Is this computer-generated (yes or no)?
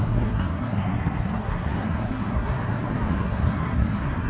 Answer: yes